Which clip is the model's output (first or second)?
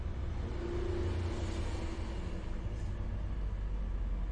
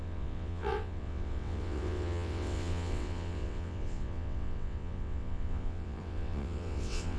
second